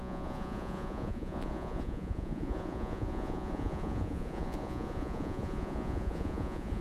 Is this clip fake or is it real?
fake